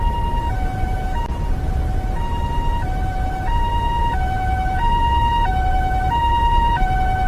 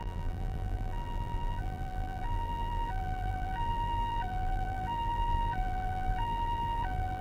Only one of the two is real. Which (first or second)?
first